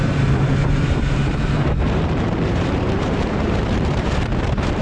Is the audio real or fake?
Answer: fake